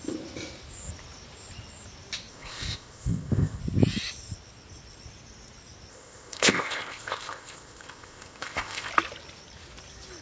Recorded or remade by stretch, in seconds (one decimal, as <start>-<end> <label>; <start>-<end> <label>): 0.0-2.3 recorded; 2.3-3.6 remade; 3.6-5.9 recorded; 5.9-8.9 remade; 8.9-10.2 recorded